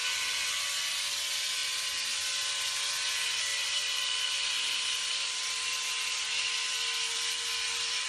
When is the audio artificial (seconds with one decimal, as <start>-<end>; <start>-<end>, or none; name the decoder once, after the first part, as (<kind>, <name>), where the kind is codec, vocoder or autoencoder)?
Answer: 1.6-2.2 (vocoder, BigVGAN v2); 3.5-7.5

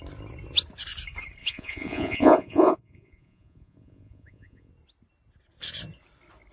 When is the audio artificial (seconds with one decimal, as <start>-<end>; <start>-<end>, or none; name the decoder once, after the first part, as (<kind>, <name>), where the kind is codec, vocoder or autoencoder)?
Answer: 1.4-4.7 (vocoder, Vocos)

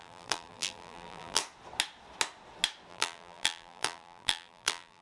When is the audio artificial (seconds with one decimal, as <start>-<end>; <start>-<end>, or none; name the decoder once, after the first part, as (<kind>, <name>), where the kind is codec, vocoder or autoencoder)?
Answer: 0.0-1.4 (vocoder, BigVGAN v2); 2.9-5.0